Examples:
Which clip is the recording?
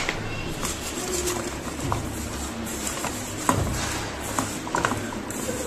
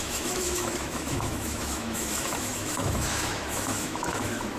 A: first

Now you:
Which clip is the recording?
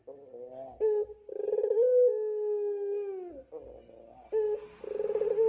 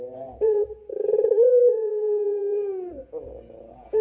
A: first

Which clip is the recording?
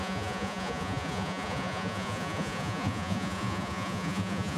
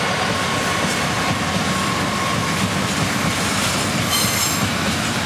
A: second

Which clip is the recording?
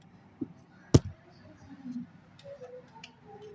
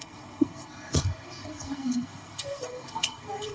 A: first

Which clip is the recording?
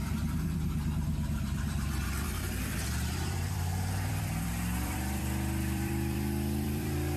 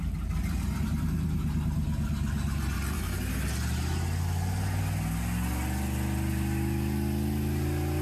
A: second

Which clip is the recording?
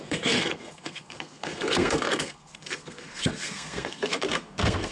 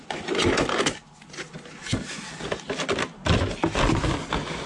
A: second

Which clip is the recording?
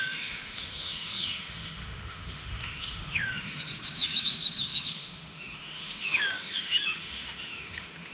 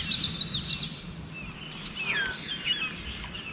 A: second